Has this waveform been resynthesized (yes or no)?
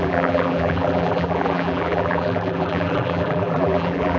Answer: yes